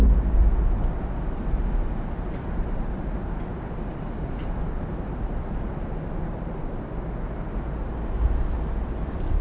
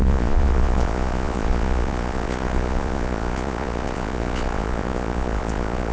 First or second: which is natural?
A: first